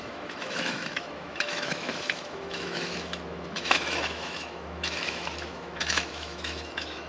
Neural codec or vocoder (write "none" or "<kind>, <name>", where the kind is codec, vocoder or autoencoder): autoencoder, DAC-VAE